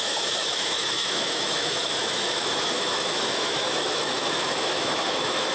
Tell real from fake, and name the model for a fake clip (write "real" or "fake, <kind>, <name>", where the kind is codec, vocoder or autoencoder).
fake, autoencoder, DAC-VAE